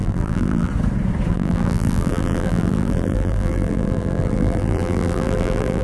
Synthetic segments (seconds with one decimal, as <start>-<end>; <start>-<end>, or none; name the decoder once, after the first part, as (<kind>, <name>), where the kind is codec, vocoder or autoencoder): 0.0-0.7 (vocoder, BigVGAN v2); 1.3-5.8